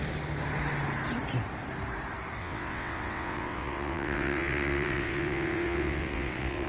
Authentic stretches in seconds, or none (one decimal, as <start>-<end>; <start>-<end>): 0.0-2.4